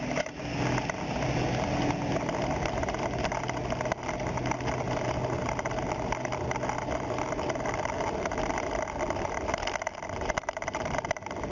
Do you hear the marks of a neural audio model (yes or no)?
no